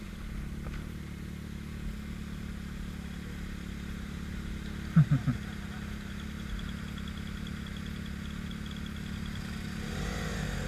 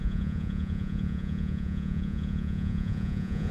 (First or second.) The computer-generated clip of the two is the second